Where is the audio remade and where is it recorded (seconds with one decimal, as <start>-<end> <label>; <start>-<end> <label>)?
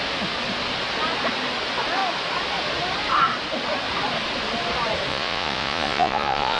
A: 0.0-5.1 recorded; 5.1-6.6 remade